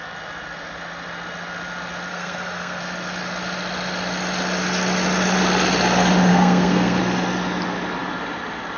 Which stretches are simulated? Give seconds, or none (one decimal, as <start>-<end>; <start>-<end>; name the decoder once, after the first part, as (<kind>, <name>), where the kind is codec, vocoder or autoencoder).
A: 2.1-2.8 (codec, SNAC); 6.3-7.0